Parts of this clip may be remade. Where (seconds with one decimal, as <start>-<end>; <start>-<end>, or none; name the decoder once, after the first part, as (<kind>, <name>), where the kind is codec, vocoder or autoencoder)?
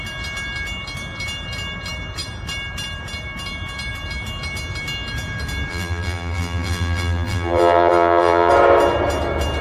5.7-8.5 (vocoder, BigVGAN v2)